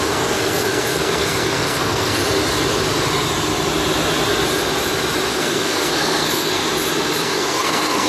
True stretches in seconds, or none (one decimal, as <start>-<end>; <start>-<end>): 2.2-5.3; 6.6-7.2

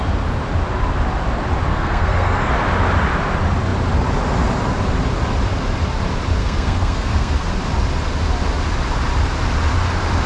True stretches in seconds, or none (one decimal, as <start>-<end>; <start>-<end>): 0.0-1.7; 2.5-6.4; 7.5-10.3

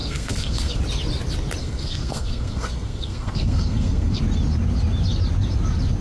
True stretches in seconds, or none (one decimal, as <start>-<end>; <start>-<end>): 0.8-1.6; 4.2-6.0

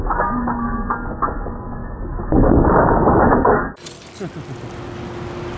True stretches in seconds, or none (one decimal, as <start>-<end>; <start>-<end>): 0.0-5.6

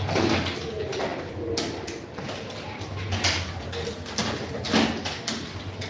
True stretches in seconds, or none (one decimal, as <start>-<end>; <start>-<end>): 0.0-5.9

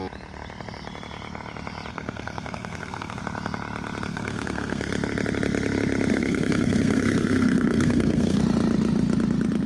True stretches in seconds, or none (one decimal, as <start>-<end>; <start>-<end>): 0.0-1.9; 3.2-4.1; 4.9-6.1; 8.4-9.7